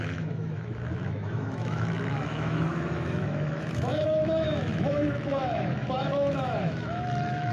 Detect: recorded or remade remade